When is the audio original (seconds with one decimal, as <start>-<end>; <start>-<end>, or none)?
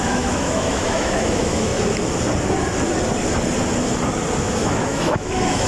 1.7-4.4